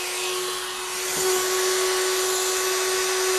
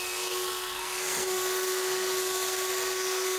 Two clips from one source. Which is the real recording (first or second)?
first